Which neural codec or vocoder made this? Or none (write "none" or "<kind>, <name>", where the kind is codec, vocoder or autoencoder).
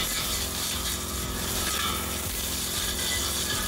vocoder, BigVGAN v2